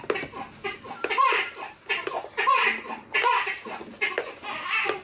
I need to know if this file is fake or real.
real